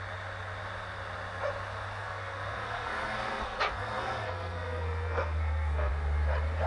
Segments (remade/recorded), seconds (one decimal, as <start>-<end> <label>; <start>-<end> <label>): 0.0-2.0 recorded; 2.0-5.9 remade; 5.9-6.7 recorded